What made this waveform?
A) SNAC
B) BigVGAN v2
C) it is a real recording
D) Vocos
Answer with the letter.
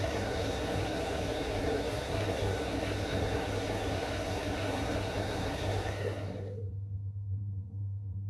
A